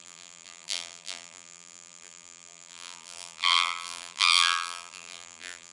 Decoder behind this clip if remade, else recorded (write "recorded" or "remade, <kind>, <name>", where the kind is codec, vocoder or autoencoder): remade, vocoder, BigVGAN v2